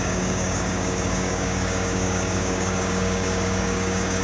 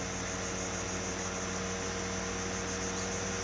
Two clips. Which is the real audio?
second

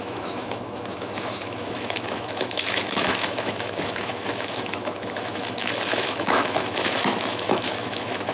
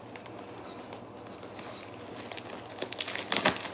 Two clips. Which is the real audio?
second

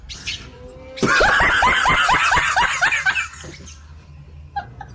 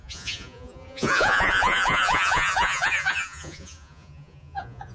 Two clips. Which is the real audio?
first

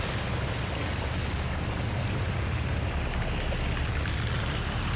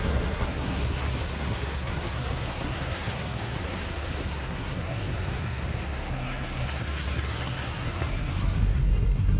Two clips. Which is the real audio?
first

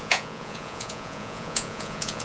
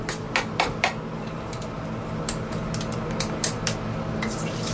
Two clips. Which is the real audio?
second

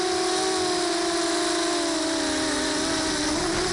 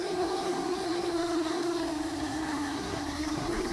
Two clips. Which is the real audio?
first